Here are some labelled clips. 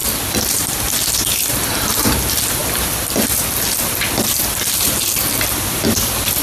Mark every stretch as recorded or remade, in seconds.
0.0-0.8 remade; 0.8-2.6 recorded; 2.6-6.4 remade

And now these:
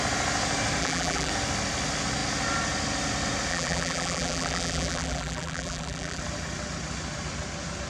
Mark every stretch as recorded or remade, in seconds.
0.0-0.8 recorded; 0.8-1.3 remade; 1.3-3.5 recorded; 3.5-6.2 remade; 6.2-7.9 recorded

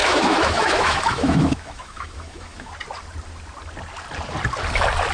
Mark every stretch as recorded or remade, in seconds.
0.0-2.7 remade; 2.7-5.1 recorded

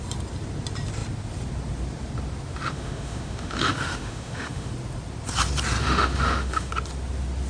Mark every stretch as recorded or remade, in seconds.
0.0-2.7 recorded; 2.7-4.7 remade; 4.7-5.8 recorded; 5.8-6.7 remade; 6.7-7.5 recorded

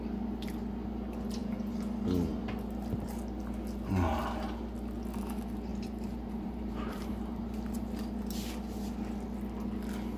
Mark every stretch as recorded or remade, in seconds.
0.0-5.7 recorded; 5.7-7.8 remade; 7.8-10.2 recorded

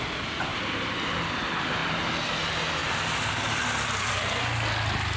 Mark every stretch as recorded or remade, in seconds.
0.0-0.5 recorded; 0.5-1.3 remade; 1.3-2.8 recorded; 2.8-4.1 remade; 4.1-5.2 recorded

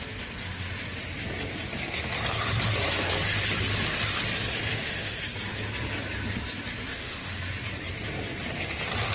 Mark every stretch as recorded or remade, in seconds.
0.0-4.7 recorded; 4.7-5.2 remade; 5.2-6.9 recorded; 6.9-7.4 remade; 7.4-9.1 recorded

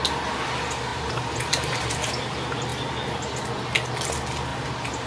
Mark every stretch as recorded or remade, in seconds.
0.0-0.9 recorded; 0.9-2.1 remade; 2.1-4.5 recorded; 4.5-5.1 remade